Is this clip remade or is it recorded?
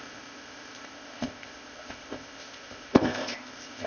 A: remade